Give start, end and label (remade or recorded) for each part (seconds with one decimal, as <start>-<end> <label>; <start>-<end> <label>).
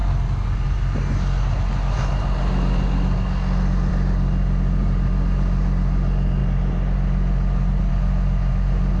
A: 0.0-9.0 recorded